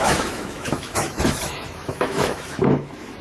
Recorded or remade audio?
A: remade